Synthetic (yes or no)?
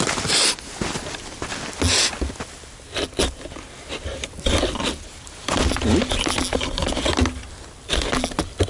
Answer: no